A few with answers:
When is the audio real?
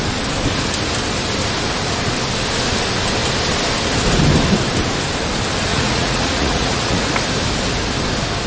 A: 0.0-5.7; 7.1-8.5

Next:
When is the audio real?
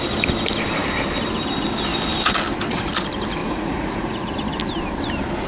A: 0.0-3.4; 4.3-5.5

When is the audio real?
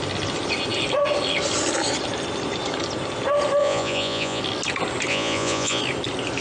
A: 0.0-3.6; 4.4-5.1; 5.8-6.4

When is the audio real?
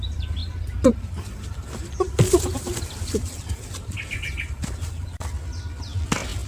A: 0.0-6.5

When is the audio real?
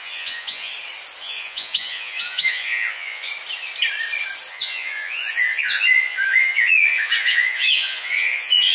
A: 0.7-1.2; 3.3-4.5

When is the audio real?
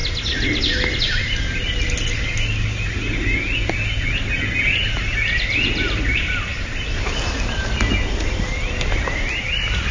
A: 0.0-9.9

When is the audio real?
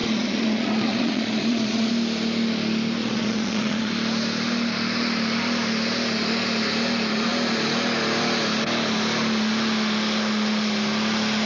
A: 1.9-3.0; 3.9-11.5